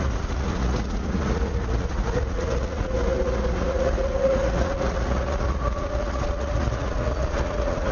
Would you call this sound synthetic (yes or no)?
yes